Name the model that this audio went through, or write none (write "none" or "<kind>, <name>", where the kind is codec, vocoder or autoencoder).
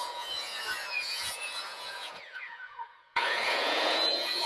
vocoder, Vocos